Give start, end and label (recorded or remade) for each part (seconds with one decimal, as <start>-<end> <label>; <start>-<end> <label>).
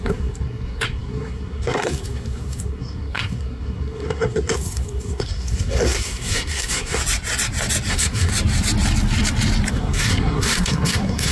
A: 0.0-7.0 remade; 7.0-7.9 recorded; 7.9-8.3 remade; 8.3-9.7 recorded; 9.7-11.3 remade